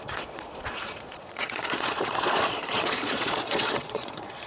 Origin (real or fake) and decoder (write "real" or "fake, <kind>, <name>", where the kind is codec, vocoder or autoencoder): fake, vocoder, Vocos